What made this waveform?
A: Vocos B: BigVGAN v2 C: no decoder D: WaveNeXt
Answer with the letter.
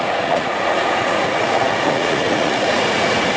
A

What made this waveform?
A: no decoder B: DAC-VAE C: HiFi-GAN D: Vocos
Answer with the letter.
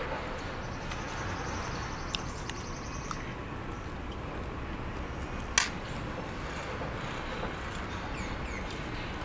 A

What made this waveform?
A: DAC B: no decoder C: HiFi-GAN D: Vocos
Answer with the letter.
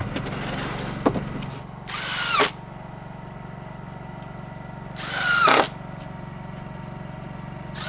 B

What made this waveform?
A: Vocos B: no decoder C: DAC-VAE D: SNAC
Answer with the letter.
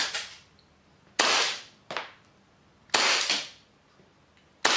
B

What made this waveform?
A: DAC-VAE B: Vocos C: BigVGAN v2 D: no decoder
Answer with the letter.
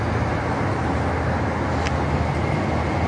D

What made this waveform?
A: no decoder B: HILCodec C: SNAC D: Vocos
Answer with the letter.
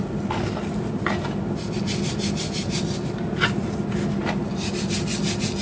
A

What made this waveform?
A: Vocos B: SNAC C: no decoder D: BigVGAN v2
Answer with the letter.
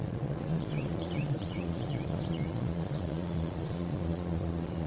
A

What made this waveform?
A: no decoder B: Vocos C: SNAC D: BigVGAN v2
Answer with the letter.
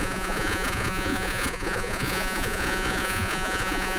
B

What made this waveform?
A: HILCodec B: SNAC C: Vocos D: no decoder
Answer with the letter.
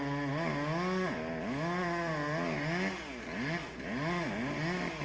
D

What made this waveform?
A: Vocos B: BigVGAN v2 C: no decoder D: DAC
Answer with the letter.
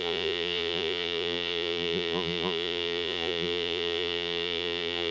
A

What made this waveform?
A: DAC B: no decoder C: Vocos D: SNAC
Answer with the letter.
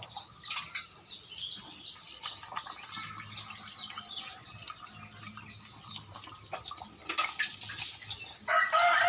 B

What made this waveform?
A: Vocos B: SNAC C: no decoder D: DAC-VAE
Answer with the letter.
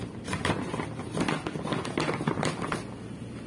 C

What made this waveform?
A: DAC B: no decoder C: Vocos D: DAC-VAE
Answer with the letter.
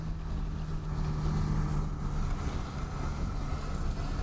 B